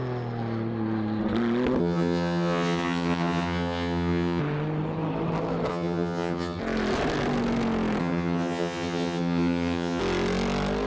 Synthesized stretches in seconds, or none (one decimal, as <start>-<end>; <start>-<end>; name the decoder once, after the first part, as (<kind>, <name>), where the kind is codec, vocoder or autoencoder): 1.8-4.4 (vocoder, HiFi-GAN); 5.7-6.6; 8.0-10.0